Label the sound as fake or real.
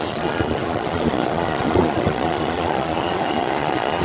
fake